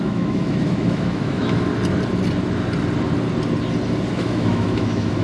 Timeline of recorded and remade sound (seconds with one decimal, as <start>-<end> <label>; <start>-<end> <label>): 0.0-1.7 remade; 1.7-4.1 recorded; 4.1-5.2 remade